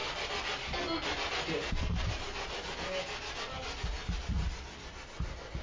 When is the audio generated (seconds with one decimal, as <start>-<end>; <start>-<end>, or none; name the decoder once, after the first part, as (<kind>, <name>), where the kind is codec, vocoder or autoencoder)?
none